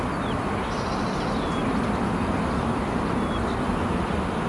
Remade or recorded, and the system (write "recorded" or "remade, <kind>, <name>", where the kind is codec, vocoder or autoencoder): recorded